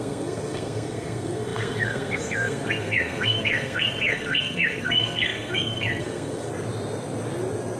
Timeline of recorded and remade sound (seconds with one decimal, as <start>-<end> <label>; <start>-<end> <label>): 0.0-6.5 remade; 6.5-7.8 recorded